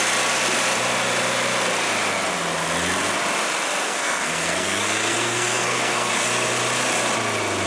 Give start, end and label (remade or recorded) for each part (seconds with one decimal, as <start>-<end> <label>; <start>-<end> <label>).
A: 0.0-3.8 recorded; 3.8-6.1 remade; 6.1-7.7 recorded